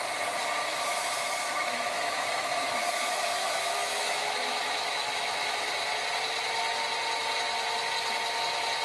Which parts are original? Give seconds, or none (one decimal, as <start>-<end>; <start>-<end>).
0.0-0.7; 5.7-8.8